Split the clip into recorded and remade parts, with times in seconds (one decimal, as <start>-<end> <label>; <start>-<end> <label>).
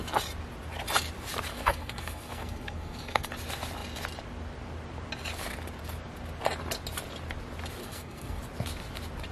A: 0.0-1.5 recorded; 1.5-3.3 remade; 3.3-7.8 recorded; 7.8-8.4 remade; 8.4-9.3 recorded